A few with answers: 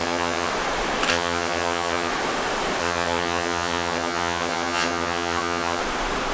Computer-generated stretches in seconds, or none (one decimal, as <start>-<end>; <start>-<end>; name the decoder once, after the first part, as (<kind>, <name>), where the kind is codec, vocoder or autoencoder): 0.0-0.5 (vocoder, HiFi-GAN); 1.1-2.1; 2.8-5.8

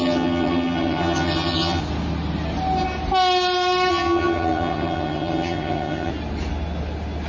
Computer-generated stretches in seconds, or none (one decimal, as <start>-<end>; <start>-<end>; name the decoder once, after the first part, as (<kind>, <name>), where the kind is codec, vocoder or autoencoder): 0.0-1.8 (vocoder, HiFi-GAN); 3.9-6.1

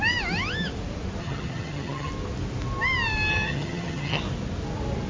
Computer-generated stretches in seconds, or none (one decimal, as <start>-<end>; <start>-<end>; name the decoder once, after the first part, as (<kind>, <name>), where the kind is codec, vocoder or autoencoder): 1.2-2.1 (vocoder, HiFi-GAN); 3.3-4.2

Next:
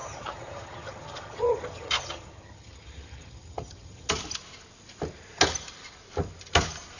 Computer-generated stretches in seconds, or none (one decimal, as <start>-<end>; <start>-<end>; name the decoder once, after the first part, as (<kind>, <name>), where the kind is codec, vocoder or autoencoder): 0.0-4.1 (vocoder, HiFi-GAN)

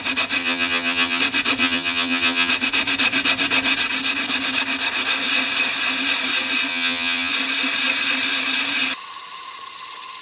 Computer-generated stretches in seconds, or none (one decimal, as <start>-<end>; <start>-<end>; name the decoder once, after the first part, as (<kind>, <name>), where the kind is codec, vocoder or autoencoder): 0.4-1.2 (vocoder, HiFi-GAN); 1.6-2.5; 6.7-7.3